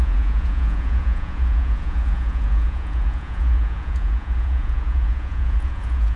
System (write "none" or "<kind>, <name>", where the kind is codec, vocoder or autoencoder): vocoder, Vocos